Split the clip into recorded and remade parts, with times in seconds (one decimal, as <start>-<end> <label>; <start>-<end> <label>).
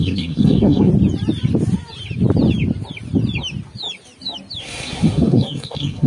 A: 0.0-0.9 remade; 0.9-4.6 recorded; 4.6-6.1 remade